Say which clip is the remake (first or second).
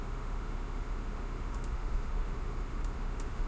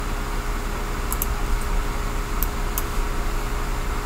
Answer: first